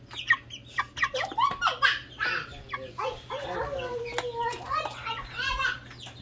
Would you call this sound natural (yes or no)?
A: yes